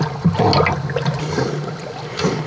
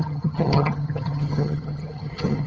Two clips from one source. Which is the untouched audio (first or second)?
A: first